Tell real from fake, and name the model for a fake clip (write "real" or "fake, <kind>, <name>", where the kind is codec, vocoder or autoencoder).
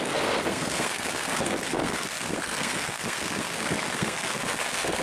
fake, codec, SNAC